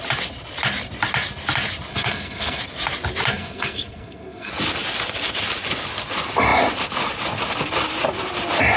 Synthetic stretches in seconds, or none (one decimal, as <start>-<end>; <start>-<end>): 1.9-2.6; 3.3-4.5